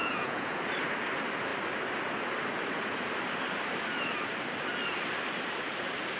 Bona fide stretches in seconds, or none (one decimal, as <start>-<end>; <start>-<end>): 0.6-6.2